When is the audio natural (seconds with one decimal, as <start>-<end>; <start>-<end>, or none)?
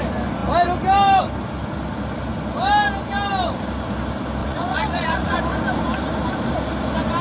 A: 0.0-4.4; 5.4-7.2